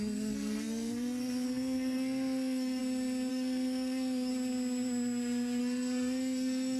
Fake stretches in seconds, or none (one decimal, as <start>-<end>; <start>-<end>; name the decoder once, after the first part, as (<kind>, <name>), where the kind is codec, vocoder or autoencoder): 0.0-2.8 (codec, SNAC); 3.3-4.3; 5.6-6.8